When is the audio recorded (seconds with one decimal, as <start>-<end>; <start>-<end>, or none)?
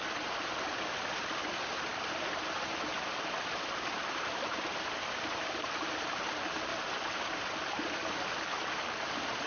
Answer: 0.0-9.5